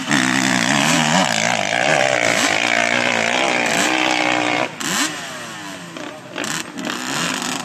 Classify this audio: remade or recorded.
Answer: recorded